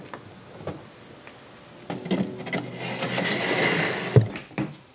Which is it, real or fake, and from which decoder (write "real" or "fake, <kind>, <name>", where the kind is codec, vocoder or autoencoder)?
real